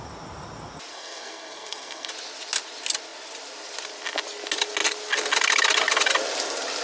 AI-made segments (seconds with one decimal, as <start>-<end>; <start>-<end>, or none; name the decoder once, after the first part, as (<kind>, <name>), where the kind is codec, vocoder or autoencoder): 0.9-2.1 (codec, SNAC)